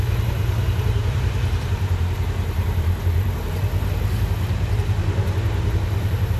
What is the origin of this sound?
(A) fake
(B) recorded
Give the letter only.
A